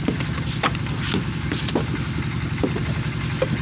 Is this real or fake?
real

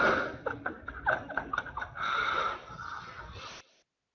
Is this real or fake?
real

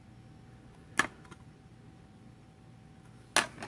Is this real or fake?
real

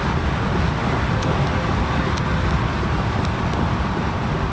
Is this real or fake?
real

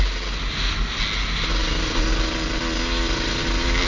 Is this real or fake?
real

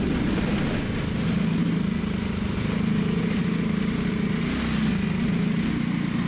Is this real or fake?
real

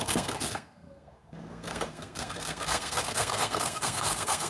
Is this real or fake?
fake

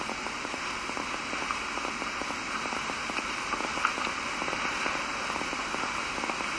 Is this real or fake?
real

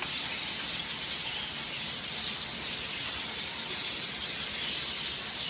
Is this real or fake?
real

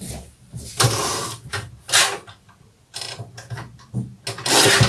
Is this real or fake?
real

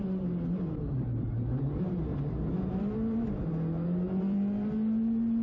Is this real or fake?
real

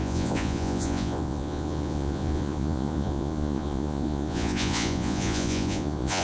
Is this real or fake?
fake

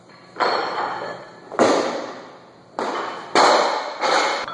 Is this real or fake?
real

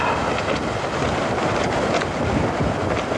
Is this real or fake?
real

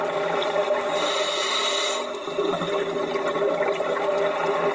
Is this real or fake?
real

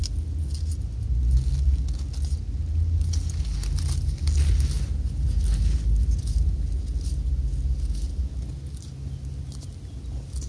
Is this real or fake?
real